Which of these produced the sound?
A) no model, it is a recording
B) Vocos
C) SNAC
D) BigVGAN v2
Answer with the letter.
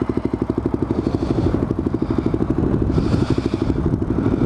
A